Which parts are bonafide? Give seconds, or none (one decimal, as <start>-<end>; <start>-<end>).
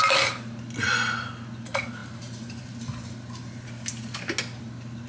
0.0-5.1